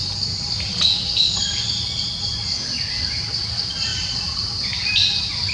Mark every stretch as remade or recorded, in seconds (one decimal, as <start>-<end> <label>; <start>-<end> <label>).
0.0-2.9 recorded; 2.9-5.5 remade